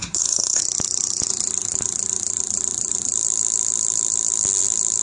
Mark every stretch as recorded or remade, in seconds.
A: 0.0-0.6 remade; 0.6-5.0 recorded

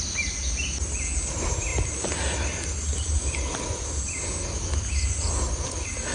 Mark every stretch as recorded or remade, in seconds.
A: 0.0-6.1 recorded

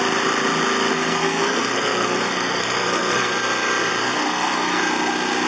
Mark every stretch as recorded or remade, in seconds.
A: 0.0-0.9 recorded; 0.9-3.3 remade; 3.3-4.0 recorded; 4.0-4.8 remade; 4.8-5.5 recorded

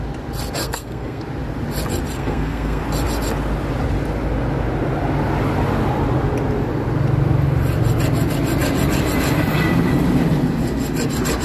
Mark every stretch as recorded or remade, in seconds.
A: 0.0-0.6 recorded; 0.6-1.2 remade; 1.2-2.2 recorded; 2.2-2.8 remade; 2.8-11.4 recorded